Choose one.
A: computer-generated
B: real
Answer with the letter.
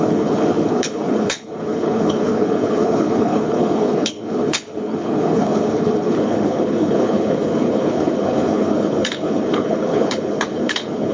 A